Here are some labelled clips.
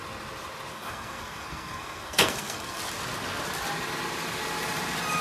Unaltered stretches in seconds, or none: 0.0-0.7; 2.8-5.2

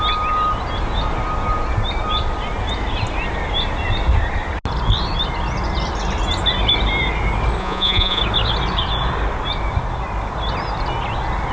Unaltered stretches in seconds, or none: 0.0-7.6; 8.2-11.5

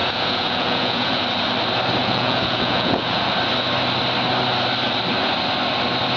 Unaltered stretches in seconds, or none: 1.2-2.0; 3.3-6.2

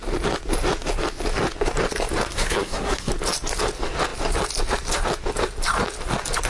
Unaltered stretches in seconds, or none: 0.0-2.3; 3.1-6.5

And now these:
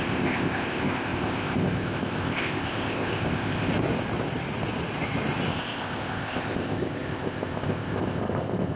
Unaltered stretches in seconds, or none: 3.7-5.5

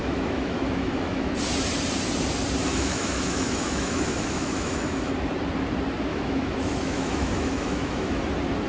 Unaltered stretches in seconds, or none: 1.3-2.7; 5.1-6.1; 8.2-8.7

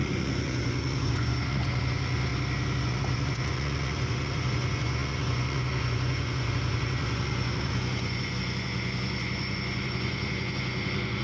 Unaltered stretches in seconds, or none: 2.3-2.8

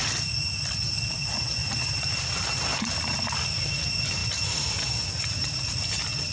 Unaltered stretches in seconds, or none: 0.0-1.6; 2.9-6.3